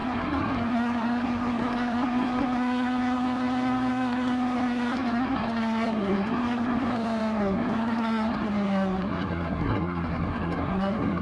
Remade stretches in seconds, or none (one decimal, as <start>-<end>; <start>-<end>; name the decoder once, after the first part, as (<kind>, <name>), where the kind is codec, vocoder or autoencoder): 0.0-11.2 (codec, SNAC)